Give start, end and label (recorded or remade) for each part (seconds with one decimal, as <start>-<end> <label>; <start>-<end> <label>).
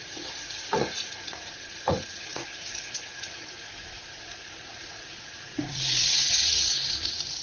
0.0-7.4 remade